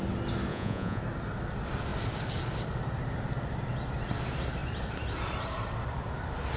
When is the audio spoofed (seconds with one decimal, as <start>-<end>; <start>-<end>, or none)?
0.5-1.0